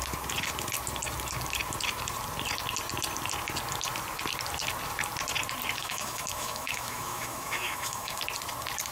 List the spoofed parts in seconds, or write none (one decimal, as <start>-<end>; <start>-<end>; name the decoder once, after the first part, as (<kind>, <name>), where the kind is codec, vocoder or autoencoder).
5.8-8.2 (autoencoder, DAC-VAE)